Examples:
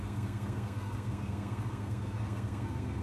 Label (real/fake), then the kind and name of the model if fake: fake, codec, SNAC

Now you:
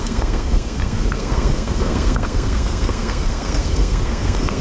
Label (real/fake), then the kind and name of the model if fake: fake, codec, SNAC